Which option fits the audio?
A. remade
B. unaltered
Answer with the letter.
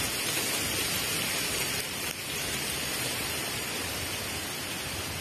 B